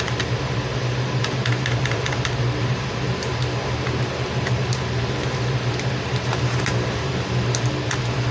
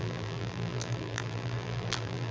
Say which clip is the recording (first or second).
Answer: first